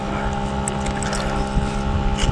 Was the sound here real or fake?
real